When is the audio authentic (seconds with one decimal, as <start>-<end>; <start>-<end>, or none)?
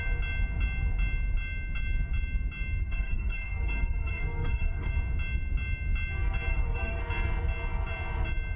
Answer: 0.0-2.8; 4.9-6.5; 7.0-8.6